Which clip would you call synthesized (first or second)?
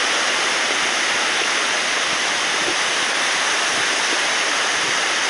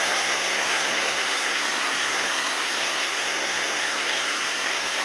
second